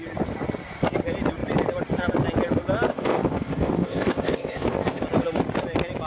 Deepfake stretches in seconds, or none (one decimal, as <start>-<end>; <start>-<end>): 2.9-5.0